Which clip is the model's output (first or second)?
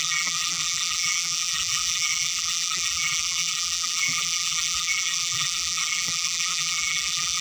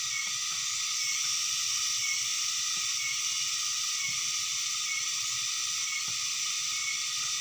first